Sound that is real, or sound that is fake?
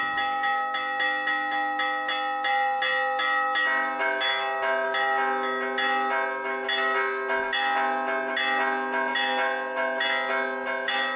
real